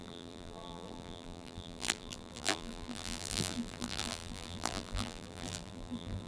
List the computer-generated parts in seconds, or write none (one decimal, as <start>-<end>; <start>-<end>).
0.0-6.3